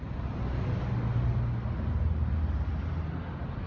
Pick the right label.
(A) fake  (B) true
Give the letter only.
B